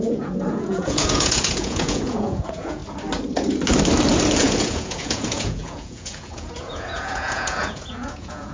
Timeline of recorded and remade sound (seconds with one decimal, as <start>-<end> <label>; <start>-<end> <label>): 0.0-2.8 remade; 2.8-4.4 recorded; 4.4-8.5 remade